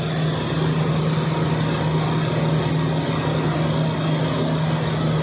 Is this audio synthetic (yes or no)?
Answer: no